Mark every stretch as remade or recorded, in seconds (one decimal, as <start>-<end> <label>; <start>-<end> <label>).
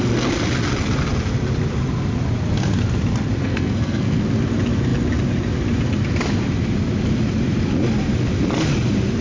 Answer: 0.0-3.4 recorded; 3.4-4.2 remade; 4.2-9.2 recorded